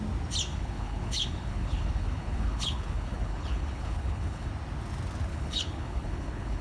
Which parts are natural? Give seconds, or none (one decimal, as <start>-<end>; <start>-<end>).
0.0-0.5; 4.5-5.3